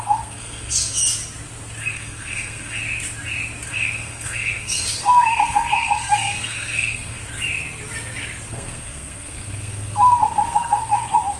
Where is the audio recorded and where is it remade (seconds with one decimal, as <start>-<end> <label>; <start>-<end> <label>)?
0.0-1.0 remade; 1.0-1.8 recorded; 1.8-2.8 remade; 2.8-3.7 recorded; 3.7-7.2 remade; 7.2-8.5 recorded; 8.5-11.4 remade